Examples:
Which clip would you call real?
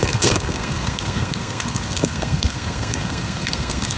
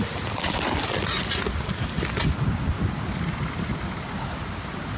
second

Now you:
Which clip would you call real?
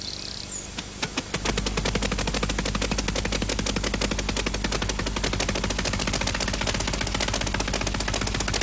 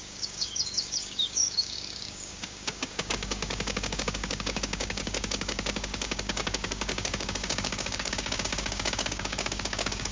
first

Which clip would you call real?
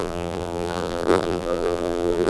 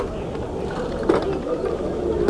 second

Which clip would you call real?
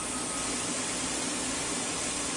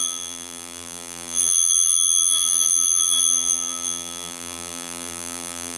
first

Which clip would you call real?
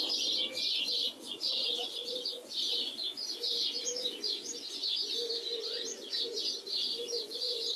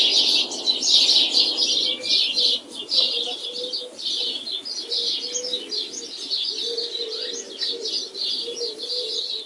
second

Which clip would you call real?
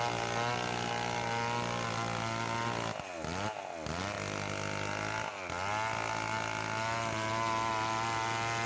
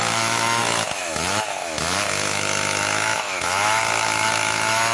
first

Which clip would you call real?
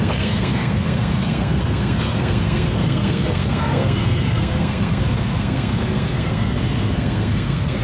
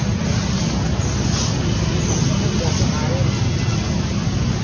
second